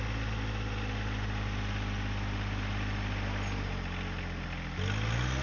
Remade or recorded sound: recorded